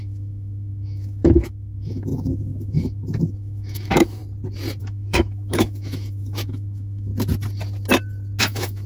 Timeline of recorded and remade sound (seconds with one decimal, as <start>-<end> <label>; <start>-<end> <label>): 0.0-4.2 remade; 4.2-4.8 recorded; 4.8-7.1 remade; 7.1-8.4 recorded; 8.4-8.9 remade